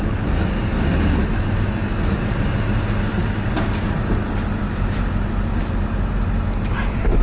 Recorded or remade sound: recorded